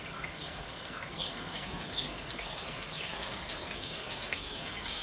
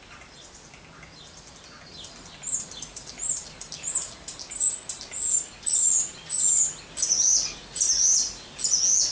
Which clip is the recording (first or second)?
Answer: second